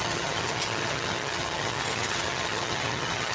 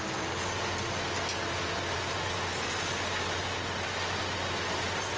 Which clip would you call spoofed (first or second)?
first